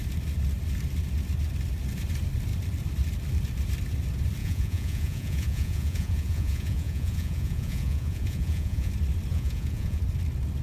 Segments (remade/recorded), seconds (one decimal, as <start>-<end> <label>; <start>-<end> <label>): 0.0-4.4 recorded; 4.4-8.9 remade; 8.9-9.3 recorded; 9.3-10.0 remade; 10.0-10.6 recorded